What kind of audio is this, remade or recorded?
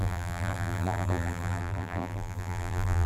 remade